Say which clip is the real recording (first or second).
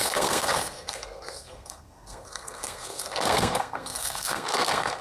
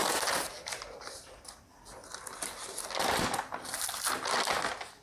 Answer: second